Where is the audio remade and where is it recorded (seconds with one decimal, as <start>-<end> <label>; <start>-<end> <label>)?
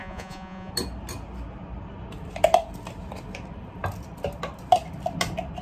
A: 0.0-0.7 remade; 0.7-5.6 recorded